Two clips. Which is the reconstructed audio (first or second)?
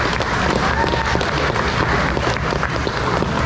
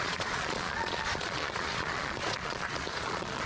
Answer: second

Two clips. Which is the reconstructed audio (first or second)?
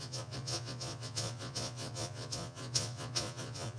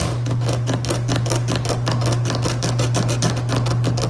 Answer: first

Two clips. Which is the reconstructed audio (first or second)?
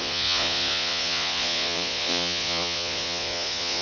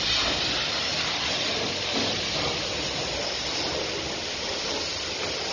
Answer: first